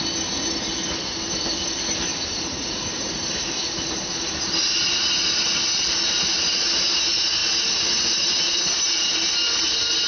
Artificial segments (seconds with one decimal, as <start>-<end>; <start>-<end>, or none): 2.1-4.7